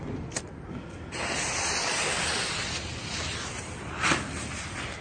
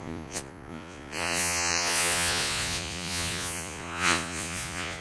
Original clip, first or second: first